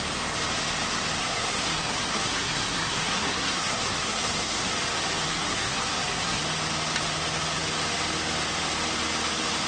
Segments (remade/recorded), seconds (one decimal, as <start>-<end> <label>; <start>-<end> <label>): 0.0-1.2 recorded; 1.2-4.7 remade; 4.7-5.3 recorded; 5.3-6.4 remade; 6.4-9.7 recorded